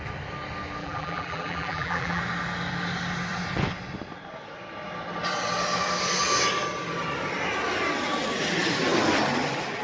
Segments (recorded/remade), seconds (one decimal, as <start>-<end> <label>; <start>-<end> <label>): 0.0-0.8 recorded; 0.8-2.2 remade; 2.2-9.8 recorded